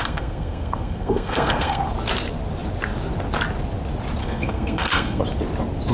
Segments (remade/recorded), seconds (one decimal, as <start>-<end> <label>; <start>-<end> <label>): 0.0-1.8 remade; 1.8-4.2 recorded; 4.2-5.2 remade; 5.2-5.9 recorded